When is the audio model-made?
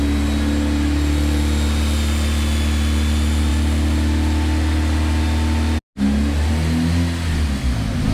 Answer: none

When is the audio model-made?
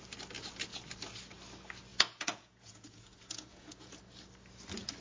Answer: 1.9-4.0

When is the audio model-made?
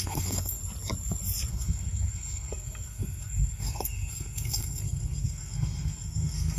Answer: 0.0-0.6; 1.5-6.6